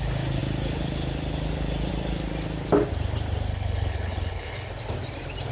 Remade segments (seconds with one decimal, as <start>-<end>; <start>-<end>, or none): 3.5-4.7

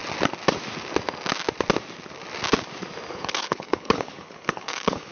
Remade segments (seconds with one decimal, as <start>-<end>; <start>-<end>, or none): 3.1-5.1

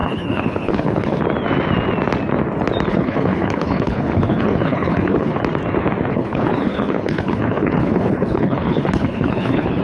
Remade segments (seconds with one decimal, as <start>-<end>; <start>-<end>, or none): 0.0-1.2; 2.9-5.4; 6.1-9.8

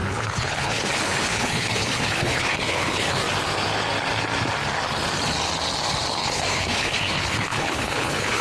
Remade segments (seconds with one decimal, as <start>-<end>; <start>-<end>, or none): 0.0-3.2; 6.1-8.4

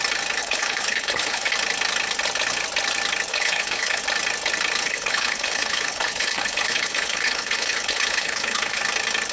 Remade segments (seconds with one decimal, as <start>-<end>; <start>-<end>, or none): 0.4-1.5; 3.3-4.0; 4.8-8.8

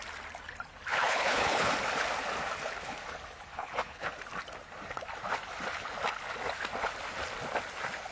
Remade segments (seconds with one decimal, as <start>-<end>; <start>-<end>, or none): 0.9-1.7; 3.5-4.1

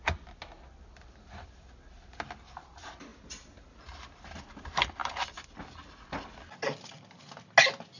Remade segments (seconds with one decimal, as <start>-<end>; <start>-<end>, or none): none